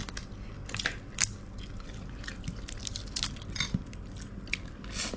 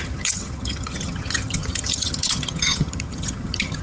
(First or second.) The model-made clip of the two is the second